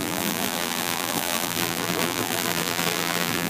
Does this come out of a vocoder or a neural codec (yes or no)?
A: yes